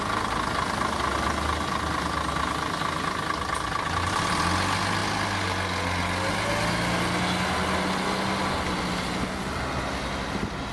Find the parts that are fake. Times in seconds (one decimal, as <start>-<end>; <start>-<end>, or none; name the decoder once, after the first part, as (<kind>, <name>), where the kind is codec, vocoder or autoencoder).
none